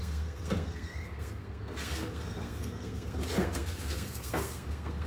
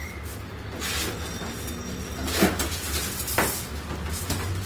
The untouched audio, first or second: second